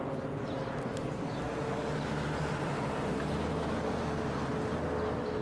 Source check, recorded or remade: recorded